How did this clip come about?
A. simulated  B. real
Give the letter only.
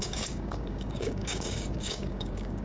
A